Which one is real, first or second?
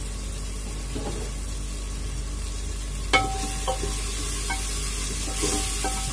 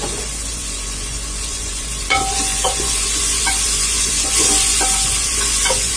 first